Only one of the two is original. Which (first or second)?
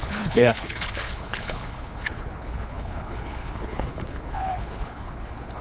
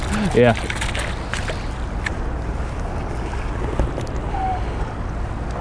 second